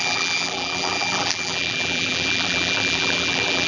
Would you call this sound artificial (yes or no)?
yes